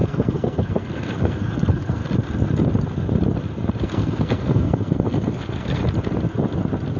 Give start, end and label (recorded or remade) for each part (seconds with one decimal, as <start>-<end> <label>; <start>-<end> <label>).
0.0-2.0 remade; 2.0-3.8 recorded; 3.8-5.8 remade; 5.8-7.0 recorded